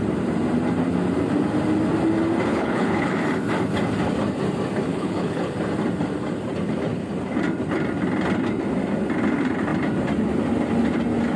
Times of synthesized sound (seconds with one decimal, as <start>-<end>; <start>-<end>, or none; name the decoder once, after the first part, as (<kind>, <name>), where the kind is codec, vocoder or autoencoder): 2.5-3.1 (codec, HILCodec); 4.9-5.5